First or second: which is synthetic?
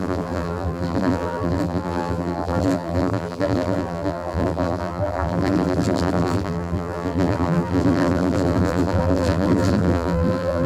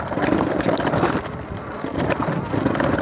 first